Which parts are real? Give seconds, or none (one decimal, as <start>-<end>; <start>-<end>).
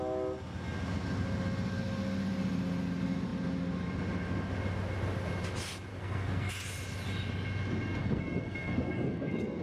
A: 0.0-5.9; 6.5-8.0